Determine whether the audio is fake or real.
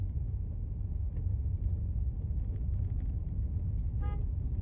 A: real